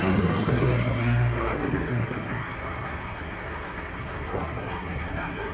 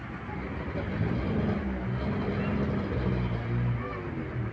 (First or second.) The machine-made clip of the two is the first